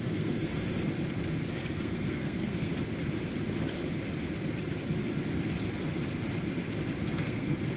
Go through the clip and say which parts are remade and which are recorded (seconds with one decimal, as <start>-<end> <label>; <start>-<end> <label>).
0.0-0.5 remade; 0.5-1.5 recorded; 1.5-2.7 remade; 2.7-7.0 recorded; 7.0-7.8 remade